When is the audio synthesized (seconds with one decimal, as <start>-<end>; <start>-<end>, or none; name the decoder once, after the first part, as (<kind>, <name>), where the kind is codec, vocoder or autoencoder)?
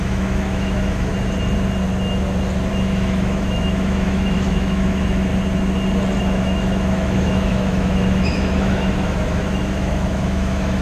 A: 0.0-1.1 (autoencoder, DAC-VAE); 2.7-5.3; 6.2-10.8